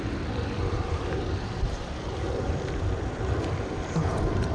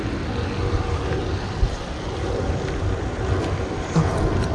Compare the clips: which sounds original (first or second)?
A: second